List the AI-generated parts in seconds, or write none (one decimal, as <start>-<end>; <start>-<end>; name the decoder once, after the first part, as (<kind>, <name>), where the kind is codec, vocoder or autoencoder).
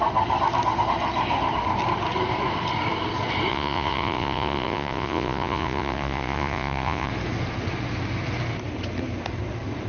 3.5-7.1 (vocoder, Vocos)